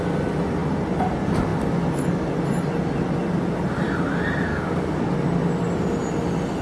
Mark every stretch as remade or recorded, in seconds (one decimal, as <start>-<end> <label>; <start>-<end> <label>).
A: 0.0-4.5 recorded; 4.5-5.1 remade; 5.1-6.6 recorded